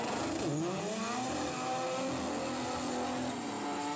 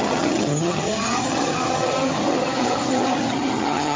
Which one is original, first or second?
first